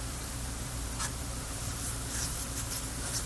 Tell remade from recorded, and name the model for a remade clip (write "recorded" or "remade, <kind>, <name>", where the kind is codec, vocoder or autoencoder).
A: remade, vocoder, BigVGAN v2